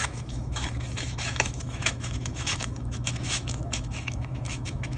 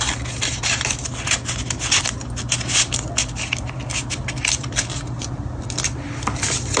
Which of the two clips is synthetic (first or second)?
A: first